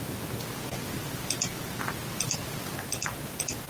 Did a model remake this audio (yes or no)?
no